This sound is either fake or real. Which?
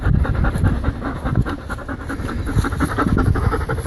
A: real